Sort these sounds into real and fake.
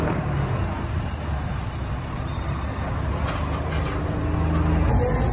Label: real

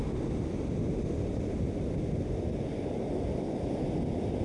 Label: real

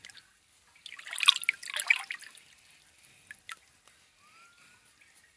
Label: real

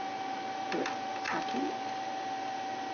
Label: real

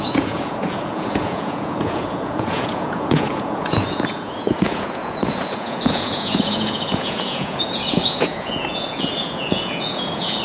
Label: fake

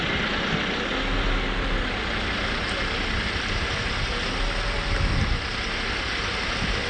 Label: real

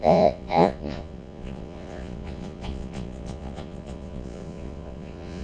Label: fake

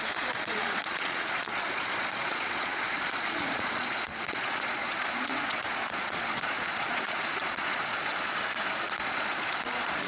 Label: fake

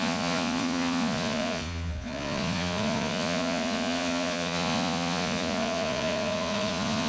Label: fake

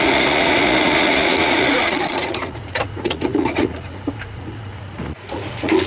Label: fake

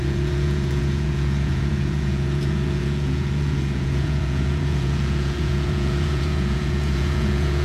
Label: fake